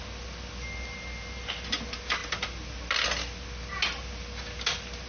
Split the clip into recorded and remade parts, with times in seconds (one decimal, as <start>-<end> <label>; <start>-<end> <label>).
0.0-5.1 recorded